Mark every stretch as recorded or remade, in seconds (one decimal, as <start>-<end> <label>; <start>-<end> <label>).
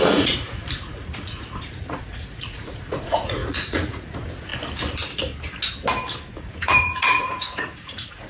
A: 0.0-4.5 remade; 4.5-6.4 recorded; 6.4-8.3 remade